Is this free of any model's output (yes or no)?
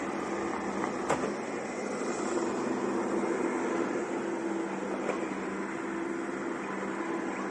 yes